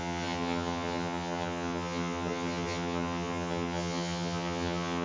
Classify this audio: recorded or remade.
remade